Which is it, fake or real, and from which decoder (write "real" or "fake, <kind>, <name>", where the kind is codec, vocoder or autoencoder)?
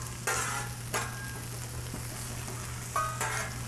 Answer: real